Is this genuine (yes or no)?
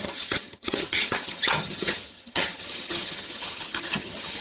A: no